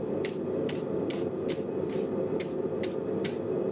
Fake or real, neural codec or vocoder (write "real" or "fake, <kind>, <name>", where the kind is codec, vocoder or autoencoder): real